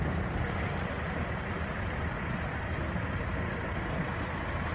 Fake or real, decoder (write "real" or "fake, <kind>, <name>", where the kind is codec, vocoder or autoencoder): real